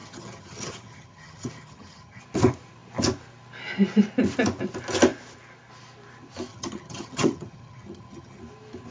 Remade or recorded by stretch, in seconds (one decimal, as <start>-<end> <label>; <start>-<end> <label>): 0.0-2.2 remade; 2.2-6.5 recorded; 6.5-8.4 remade; 8.4-8.9 recorded